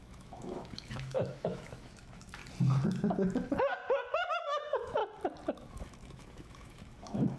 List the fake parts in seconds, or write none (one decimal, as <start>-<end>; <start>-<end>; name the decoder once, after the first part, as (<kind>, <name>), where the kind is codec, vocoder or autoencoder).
0.0-2.4 (autoencoder, DAC-VAE); 4.3-5.0; 5.7-7.4